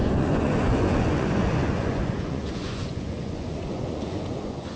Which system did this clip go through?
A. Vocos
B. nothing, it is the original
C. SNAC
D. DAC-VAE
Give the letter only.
A